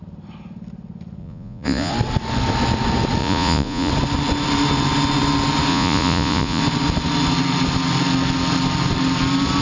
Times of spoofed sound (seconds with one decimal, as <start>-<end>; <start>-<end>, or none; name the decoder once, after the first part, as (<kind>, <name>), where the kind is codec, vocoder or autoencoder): 1.2-1.9 (vocoder, Vocos); 3.2-3.9; 5.7-6.6

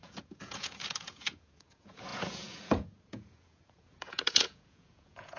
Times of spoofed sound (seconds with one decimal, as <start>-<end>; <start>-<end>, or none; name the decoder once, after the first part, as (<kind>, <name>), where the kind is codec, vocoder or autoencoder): 0.0-5.4 (vocoder, Vocos)